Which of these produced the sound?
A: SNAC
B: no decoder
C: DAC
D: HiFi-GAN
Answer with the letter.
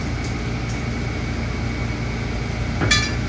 B